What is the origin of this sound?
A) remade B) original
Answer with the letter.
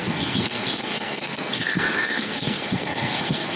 A